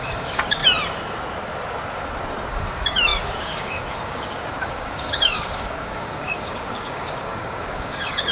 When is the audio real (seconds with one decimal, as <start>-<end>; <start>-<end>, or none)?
0.6-2.5